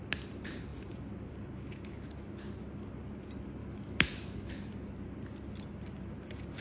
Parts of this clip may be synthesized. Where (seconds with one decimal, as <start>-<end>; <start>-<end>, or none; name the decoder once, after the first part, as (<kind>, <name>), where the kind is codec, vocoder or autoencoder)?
3.6-4.5 (autoencoder, DAC-VAE)